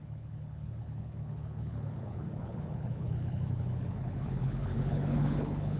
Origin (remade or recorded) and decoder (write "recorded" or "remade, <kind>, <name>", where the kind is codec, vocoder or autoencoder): remade, codec, HILCodec